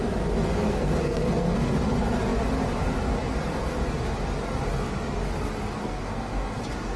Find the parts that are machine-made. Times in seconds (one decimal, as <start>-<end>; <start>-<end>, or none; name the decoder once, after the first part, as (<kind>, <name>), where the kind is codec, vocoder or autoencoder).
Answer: 0.5-1.7 (codec, SNAC); 5.8-6.6